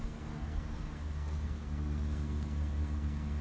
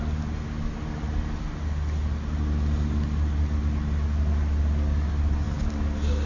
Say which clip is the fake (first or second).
first